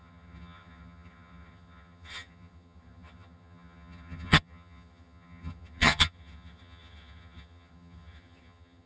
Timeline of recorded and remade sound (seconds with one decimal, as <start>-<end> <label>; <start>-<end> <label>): 0.0-8.9 remade